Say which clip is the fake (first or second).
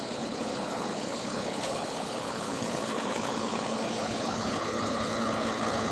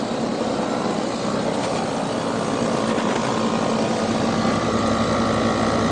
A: first